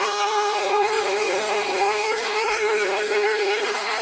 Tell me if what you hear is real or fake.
fake